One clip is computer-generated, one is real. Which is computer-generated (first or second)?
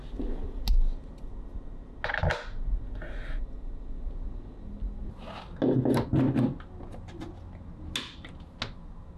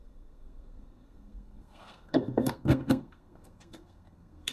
second